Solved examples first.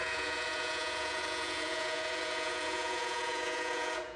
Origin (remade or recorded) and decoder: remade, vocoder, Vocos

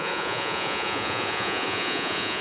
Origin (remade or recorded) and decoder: remade, vocoder, Vocos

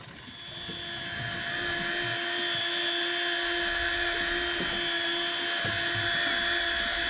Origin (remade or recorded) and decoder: recorded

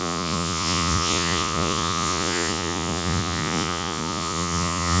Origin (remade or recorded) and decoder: remade, vocoder, Vocos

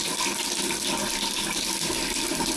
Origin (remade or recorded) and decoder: recorded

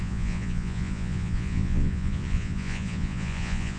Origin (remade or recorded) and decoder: remade, vocoder, Vocos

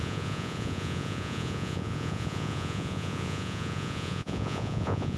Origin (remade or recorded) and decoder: remade, vocoder, Vocos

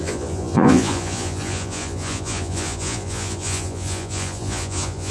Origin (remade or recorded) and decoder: remade, vocoder, Vocos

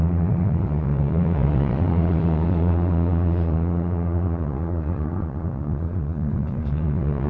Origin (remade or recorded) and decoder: remade, vocoder, Vocos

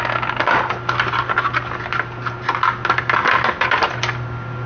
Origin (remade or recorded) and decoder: recorded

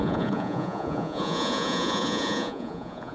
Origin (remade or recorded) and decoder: remade, vocoder, Vocos